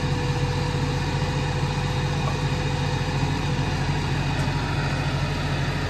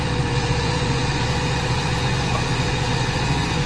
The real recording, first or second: first